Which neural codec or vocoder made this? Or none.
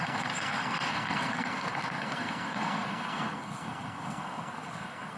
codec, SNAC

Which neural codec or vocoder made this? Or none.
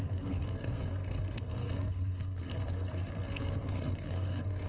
codec, SNAC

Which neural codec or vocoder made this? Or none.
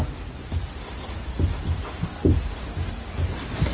none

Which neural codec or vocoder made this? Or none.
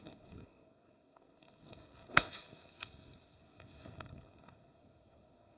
codec, SNAC